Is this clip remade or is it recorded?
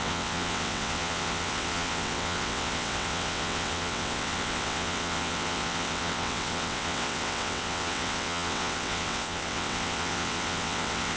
remade